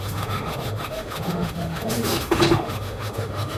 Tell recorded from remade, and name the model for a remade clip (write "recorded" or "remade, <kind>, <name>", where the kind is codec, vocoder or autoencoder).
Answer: remade, autoencoder, DAC-VAE